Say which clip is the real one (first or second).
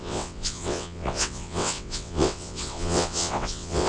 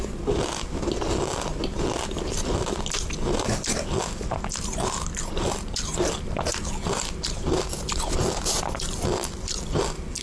second